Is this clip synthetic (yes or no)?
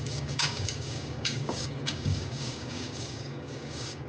yes